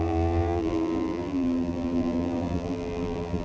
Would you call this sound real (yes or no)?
no